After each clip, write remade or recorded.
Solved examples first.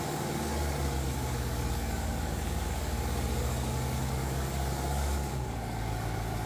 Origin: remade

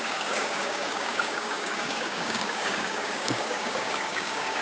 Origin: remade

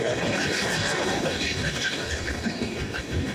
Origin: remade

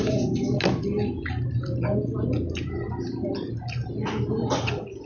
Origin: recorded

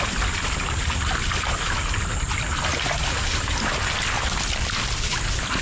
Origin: recorded